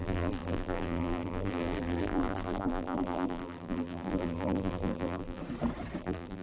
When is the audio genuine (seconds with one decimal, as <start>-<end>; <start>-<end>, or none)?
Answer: 5.4-6.0